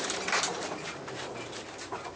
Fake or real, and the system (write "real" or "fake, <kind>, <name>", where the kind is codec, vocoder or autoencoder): fake, vocoder, BigVGAN v2